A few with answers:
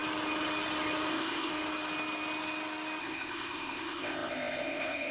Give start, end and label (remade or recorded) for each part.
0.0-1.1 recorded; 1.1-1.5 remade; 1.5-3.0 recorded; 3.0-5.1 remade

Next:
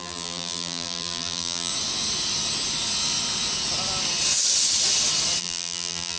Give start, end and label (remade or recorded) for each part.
0.0-1.7 remade; 1.7-5.4 recorded; 5.4-6.2 remade

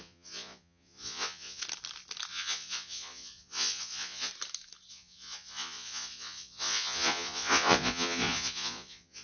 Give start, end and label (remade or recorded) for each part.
0.0-1.6 remade; 1.6-2.3 recorded; 2.3-4.3 remade; 4.3-4.9 recorded; 4.9-9.2 remade

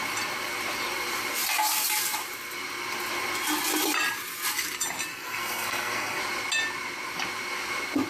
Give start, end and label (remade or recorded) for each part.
0.0-5.1 recorded; 5.1-6.2 remade; 6.2-8.1 recorded